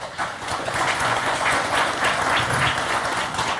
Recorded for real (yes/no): no